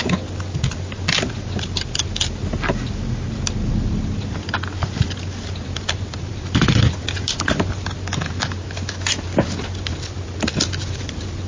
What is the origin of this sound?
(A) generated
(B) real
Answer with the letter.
B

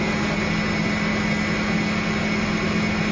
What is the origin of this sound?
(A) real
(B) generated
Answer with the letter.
A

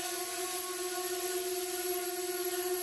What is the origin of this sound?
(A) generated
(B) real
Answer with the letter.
B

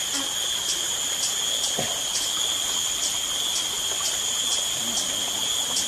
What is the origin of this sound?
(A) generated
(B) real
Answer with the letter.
B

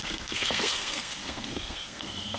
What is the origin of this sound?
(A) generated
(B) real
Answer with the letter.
A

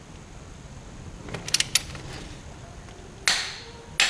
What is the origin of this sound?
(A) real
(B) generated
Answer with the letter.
A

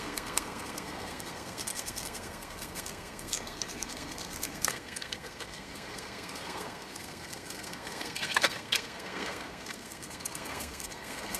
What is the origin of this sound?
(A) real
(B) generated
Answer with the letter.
B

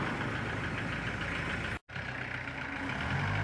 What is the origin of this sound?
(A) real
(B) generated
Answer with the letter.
A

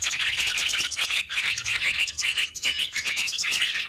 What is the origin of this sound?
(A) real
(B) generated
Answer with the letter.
B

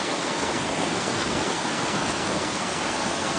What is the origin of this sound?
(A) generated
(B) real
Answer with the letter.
A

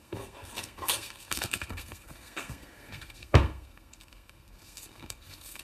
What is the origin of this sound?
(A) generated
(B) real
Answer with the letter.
A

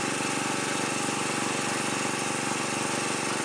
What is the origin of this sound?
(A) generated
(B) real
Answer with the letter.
B